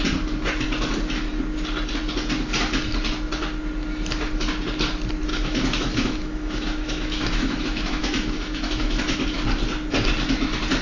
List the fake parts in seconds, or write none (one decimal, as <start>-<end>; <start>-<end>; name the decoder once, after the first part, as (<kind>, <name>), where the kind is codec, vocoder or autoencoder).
5.3-9.2 (autoencoder, DAC-VAE)